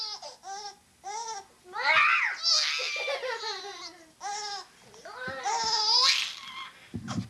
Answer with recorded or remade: recorded